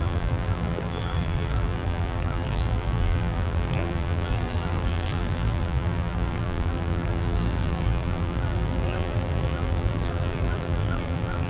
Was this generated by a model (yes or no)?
yes